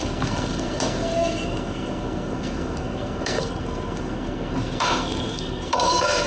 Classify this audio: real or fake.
fake